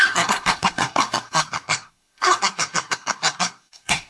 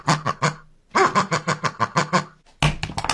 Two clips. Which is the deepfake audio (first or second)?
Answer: first